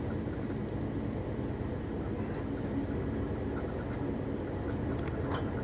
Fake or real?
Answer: real